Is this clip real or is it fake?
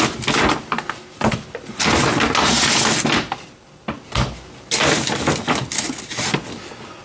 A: real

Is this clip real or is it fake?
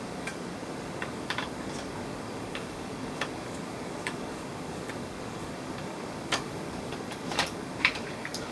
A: fake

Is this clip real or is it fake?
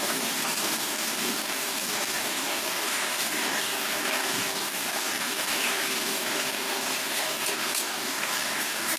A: fake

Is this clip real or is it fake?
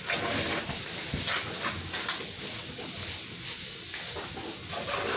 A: real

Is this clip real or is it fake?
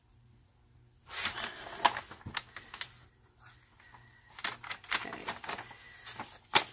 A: real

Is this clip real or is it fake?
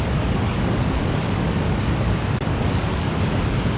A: fake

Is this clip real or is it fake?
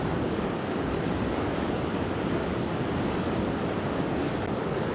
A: fake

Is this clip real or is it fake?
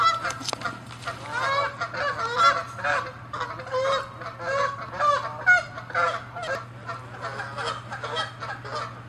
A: real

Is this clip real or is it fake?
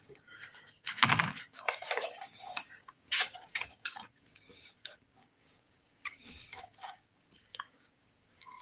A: fake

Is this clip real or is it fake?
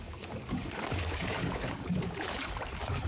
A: fake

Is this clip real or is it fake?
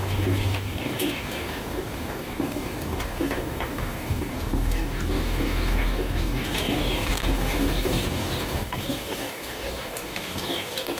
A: fake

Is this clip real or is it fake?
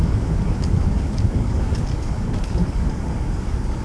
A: fake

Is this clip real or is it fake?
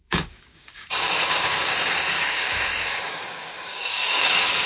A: fake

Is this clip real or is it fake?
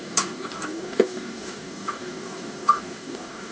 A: fake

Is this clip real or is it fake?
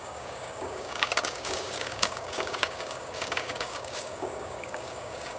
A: fake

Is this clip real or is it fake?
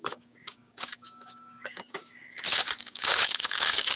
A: fake